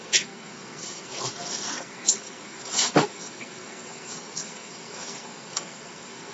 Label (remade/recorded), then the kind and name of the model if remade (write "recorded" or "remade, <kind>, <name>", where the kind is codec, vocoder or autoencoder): remade, codec, SNAC